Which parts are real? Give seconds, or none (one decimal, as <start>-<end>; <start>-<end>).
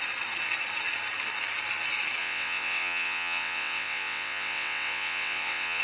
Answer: 0.0-2.2